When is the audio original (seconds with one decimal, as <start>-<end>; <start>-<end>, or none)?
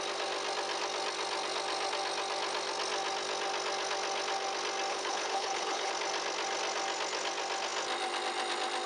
0.0-4.9; 5.9-8.9